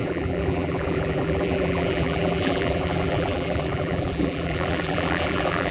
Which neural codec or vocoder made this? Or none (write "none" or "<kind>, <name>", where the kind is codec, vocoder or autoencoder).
vocoder, BigVGAN v2